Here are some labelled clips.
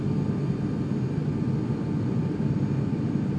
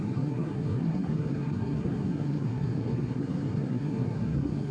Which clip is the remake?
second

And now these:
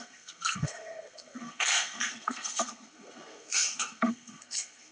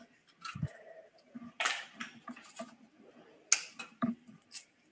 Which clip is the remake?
first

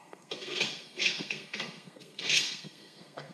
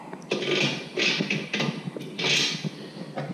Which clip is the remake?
first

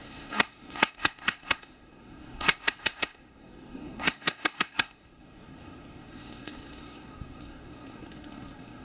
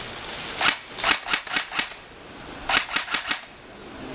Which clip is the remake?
first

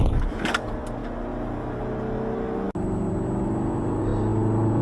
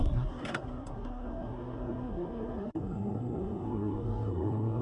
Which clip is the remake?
second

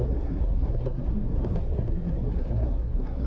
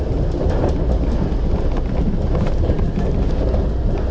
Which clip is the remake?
first